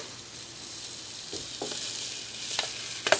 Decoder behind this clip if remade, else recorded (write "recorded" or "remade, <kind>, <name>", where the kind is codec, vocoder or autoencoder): recorded